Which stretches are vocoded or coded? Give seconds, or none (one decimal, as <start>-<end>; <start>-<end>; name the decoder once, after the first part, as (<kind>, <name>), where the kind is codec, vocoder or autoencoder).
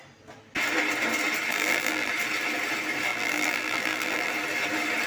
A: 1.5-2.1 (vocoder, BigVGAN v2); 3.1-4.3